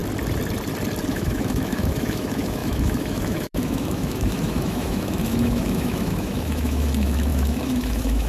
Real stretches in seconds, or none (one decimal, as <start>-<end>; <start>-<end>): 0.0-1.1